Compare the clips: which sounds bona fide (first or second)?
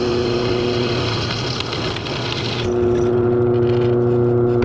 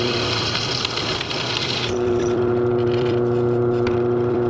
first